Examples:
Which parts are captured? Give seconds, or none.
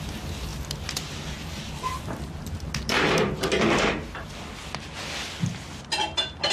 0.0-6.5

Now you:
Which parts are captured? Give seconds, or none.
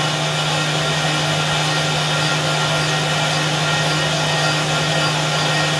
0.0-5.8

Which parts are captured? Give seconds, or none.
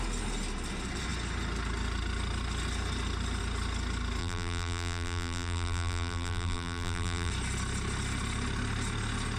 0.0-4.2; 7.3-9.4